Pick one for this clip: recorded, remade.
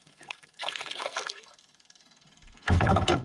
remade